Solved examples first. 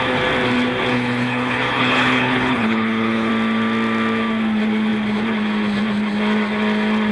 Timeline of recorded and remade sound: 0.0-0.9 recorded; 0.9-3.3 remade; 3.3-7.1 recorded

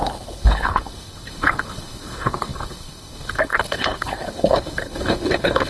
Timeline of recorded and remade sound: 0.0-5.7 remade